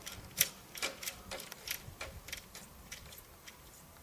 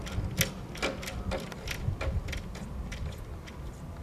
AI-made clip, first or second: first